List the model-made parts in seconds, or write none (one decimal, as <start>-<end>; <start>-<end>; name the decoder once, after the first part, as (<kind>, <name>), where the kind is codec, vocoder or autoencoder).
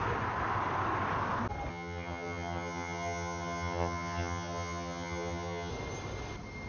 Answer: 1.7-5.7 (vocoder, HiFi-GAN)